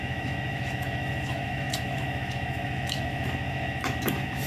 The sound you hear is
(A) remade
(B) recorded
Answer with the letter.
A